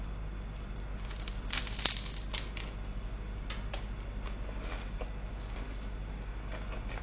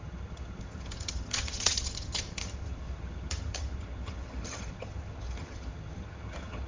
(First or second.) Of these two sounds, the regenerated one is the second